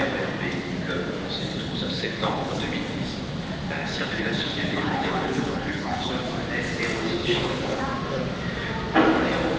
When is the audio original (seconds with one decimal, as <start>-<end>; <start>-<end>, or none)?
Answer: 0.0-1.5; 2.6-3.8; 6.1-7.2; 7.8-9.6